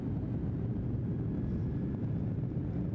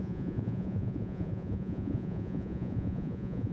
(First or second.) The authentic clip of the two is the first